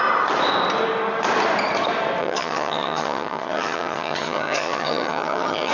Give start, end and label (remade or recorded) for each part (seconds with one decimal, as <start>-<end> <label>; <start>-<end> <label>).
0.0-2.2 recorded; 2.2-5.7 remade